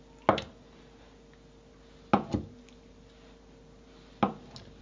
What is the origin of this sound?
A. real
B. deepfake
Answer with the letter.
A